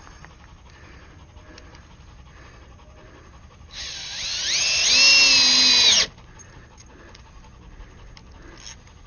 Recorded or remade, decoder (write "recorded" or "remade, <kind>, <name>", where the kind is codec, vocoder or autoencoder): recorded